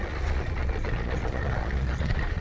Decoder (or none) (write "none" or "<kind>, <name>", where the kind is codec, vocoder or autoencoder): vocoder, Vocos